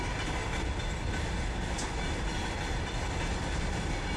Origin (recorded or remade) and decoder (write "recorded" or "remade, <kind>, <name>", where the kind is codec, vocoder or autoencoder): recorded